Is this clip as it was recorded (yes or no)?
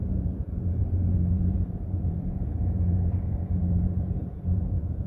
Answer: no